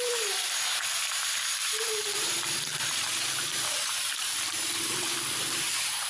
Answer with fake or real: fake